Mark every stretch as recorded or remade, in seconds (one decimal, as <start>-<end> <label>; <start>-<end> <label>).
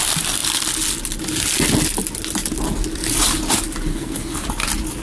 0.0-3.9 recorded; 3.9-4.4 remade; 4.4-5.0 recorded